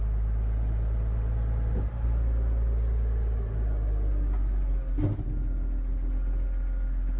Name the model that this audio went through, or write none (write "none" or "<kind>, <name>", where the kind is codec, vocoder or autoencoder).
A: none